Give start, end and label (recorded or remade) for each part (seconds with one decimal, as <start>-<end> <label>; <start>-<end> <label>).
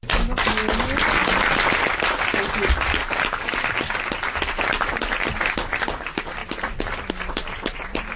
0.0-8.2 recorded